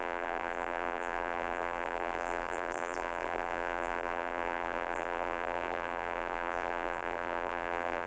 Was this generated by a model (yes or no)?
yes